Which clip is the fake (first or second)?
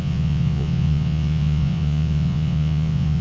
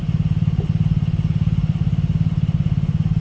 first